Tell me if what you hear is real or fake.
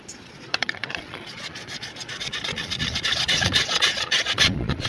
fake